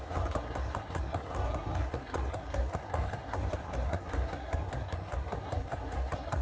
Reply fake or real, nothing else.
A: fake